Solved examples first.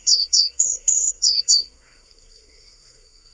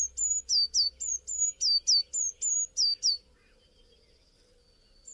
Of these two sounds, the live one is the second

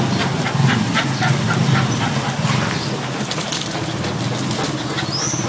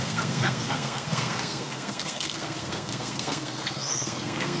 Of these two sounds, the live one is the first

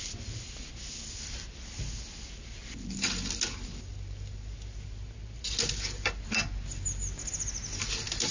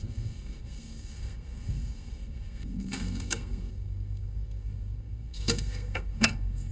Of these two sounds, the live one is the first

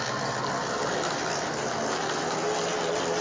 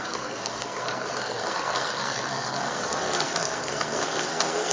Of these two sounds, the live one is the first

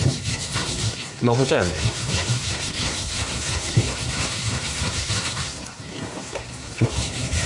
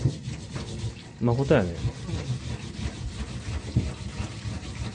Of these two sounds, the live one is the second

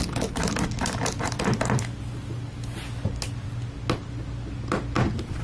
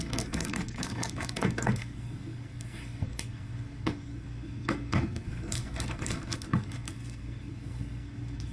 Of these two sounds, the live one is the first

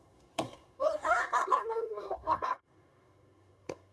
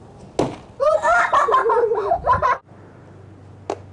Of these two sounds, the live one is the second